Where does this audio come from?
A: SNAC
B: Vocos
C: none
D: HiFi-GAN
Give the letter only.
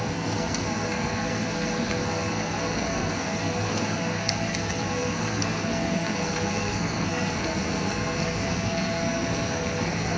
A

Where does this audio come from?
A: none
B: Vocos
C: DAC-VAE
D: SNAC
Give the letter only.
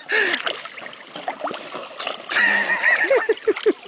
A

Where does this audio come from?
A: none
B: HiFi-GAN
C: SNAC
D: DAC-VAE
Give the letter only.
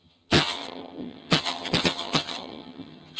B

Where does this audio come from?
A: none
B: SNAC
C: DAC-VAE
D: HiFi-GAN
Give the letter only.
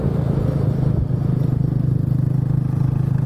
A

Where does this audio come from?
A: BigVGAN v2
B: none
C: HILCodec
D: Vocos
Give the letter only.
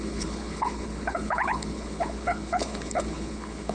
C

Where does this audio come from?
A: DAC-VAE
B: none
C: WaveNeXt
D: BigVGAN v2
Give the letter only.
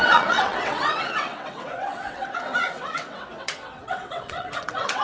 C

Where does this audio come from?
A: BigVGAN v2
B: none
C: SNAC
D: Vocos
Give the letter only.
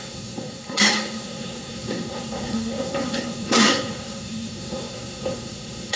C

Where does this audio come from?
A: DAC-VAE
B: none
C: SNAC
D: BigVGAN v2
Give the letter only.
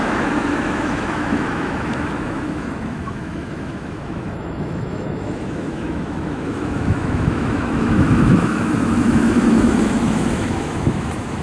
A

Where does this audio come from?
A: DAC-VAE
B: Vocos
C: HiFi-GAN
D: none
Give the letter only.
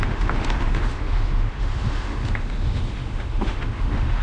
A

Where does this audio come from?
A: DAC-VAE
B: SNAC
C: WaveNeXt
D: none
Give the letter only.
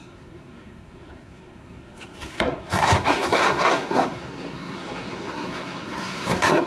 B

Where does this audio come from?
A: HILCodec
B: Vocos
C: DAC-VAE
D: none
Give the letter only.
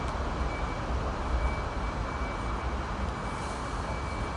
D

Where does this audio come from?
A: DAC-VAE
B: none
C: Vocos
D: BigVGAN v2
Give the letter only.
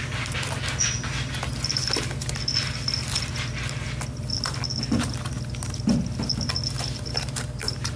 B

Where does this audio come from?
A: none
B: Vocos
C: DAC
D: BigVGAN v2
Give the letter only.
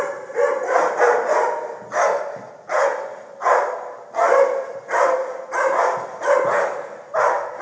A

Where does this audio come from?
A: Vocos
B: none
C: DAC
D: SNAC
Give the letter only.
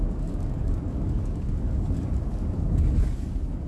C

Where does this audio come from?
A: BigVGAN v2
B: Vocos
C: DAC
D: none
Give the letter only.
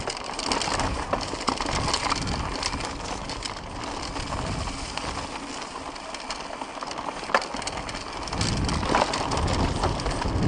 D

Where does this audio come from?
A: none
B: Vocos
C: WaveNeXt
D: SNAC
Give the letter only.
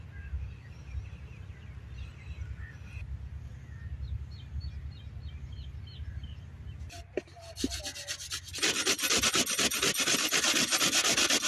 A